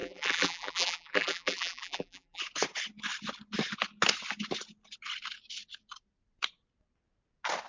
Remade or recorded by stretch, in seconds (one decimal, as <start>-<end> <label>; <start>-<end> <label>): 0.0-2.4 remade; 2.4-7.7 recorded